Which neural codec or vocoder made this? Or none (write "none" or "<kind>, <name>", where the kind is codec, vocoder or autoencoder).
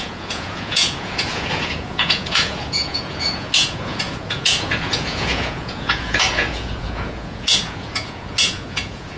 vocoder, Vocos